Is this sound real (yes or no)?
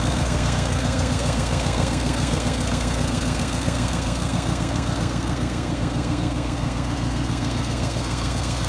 no